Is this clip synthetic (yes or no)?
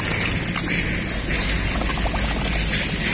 no